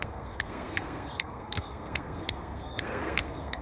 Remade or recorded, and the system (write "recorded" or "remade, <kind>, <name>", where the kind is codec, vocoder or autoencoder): remade, codec, SNAC